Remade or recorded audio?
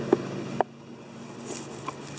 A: recorded